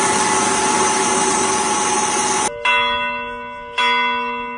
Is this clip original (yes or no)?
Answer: yes